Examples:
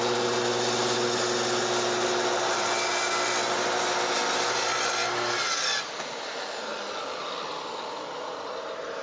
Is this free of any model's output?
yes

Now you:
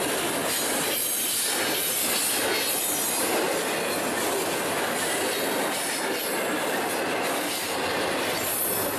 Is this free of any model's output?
yes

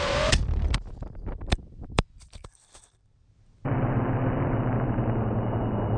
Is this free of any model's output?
no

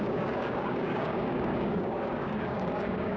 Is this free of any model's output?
no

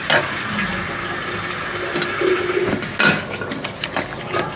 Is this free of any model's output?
yes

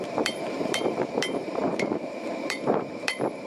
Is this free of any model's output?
no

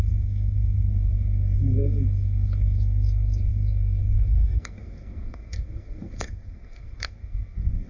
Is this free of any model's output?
no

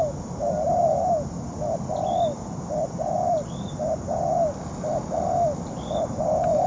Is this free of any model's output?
yes